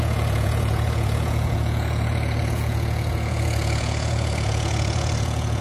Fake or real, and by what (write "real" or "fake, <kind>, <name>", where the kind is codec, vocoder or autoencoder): fake, vocoder, Vocos